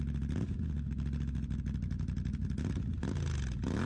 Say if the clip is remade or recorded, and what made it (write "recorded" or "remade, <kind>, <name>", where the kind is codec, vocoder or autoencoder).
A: recorded